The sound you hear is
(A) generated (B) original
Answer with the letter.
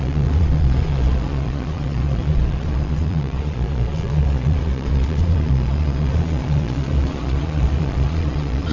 A